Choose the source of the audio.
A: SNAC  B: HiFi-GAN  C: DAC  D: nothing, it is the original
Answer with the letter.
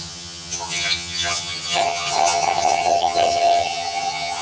B